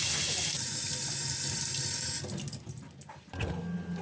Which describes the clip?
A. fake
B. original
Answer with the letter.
B